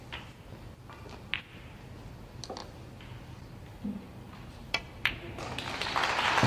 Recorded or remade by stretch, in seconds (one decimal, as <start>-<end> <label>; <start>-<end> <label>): 0.0-2.6 recorded; 2.6-6.5 remade